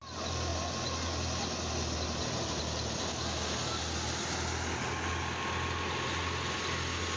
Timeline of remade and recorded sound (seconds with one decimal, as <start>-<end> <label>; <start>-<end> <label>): 0.0-7.2 recorded